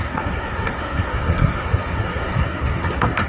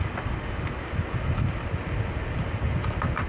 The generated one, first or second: first